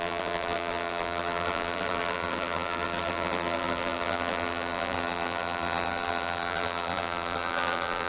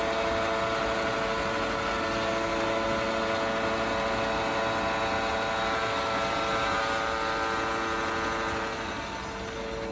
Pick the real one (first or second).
second